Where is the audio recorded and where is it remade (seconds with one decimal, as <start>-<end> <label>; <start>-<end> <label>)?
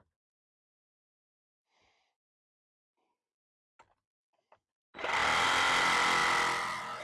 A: 0.0-7.0 recorded